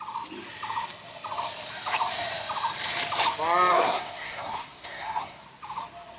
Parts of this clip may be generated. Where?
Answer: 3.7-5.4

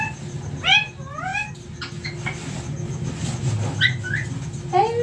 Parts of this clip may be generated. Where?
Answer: none

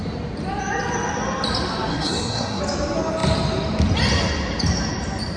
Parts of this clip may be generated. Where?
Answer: 1.9-2.6

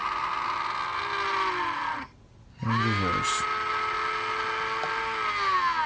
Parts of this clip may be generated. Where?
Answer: none